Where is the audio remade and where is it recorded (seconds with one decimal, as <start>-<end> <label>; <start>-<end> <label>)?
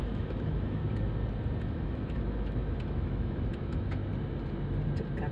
0.0-0.8 remade; 0.8-1.6 recorded; 1.6-4.0 remade; 4.0-5.3 recorded